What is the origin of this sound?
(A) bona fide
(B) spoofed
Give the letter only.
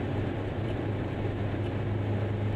B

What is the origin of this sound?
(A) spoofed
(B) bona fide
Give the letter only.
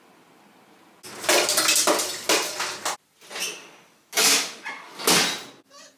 B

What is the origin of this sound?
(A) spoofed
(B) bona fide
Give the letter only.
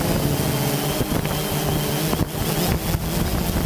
B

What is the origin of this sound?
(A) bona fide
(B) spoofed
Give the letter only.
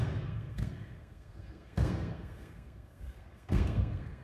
B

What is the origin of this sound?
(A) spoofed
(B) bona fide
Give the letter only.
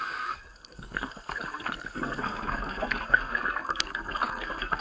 A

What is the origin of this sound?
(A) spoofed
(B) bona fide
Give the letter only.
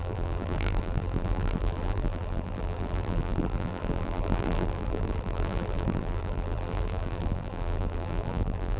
A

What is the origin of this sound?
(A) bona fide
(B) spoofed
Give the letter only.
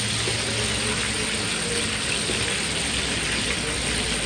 A